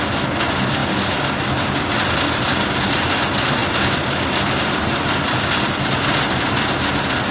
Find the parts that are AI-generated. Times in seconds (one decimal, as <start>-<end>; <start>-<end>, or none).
none